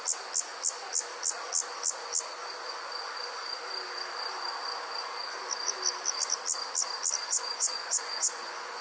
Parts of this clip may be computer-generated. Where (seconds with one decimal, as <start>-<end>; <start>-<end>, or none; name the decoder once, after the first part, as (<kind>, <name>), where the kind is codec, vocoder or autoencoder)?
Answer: 7.2-8.8 (vocoder, Vocos)